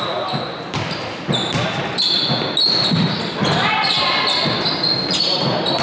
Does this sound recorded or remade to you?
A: recorded